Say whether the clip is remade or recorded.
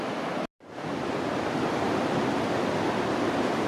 recorded